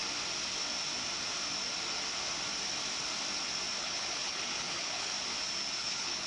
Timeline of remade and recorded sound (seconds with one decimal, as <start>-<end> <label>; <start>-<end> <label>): 0.0-3.8 recorded; 3.8-5.1 remade; 5.1-5.8 recorded; 5.8-6.3 remade